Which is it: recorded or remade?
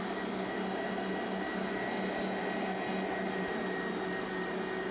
recorded